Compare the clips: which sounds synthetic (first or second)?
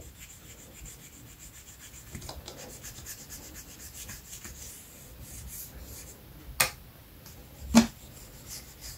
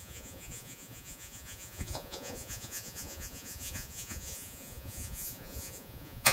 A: second